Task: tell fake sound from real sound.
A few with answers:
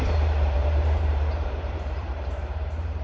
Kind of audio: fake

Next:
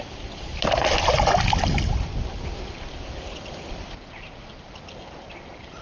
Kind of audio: real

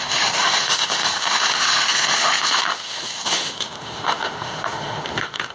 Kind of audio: fake